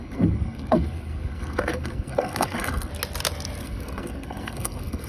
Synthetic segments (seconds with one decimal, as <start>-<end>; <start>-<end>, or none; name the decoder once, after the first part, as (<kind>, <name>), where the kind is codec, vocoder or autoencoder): 0.0-2.9 (codec, SNAC); 3.6-5.1